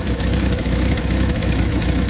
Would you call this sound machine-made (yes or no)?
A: yes